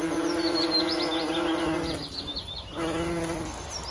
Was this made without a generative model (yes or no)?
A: yes